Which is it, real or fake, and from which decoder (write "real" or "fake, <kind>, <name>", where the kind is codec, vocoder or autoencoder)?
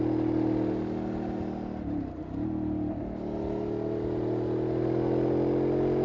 real